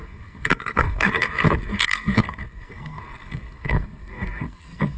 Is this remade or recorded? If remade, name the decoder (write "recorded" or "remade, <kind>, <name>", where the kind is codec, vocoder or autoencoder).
remade, codec, SNAC